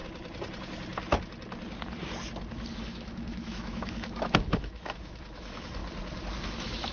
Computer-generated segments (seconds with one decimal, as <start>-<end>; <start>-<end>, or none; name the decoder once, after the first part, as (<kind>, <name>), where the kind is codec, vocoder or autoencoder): 2.7-5.8 (autoencoder, DAC-VAE); 6.4-6.9